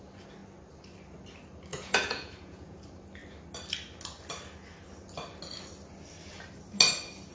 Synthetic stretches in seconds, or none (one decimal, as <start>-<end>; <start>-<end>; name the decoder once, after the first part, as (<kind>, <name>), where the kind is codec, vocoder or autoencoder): 1.7-2.8 (vocoder, Vocos)